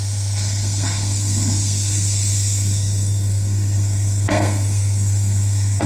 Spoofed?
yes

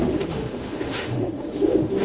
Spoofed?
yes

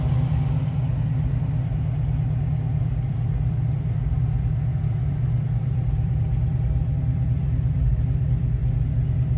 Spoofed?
yes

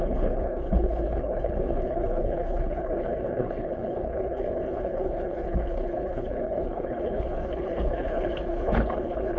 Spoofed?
yes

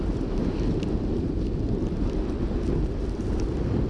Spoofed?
no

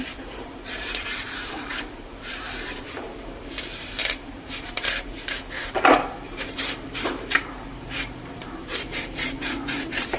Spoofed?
yes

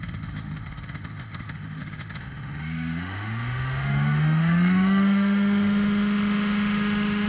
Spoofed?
yes